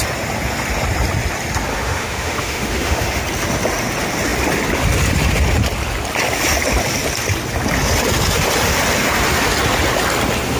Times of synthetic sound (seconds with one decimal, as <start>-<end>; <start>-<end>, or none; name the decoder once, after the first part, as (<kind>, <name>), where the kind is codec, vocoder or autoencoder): 1.7-3.2 (autoencoder, DAC-VAE)